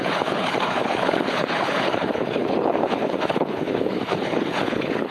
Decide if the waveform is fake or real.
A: fake